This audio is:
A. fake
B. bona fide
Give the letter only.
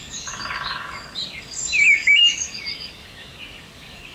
A